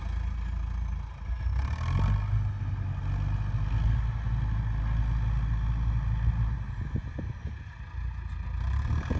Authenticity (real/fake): real